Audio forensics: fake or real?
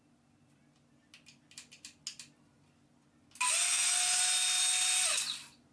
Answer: real